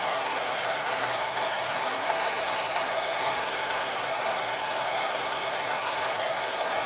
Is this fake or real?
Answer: fake